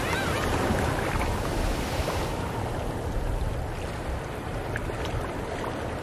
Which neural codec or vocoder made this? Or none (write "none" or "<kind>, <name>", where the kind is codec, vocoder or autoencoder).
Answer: none